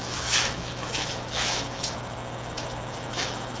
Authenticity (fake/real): fake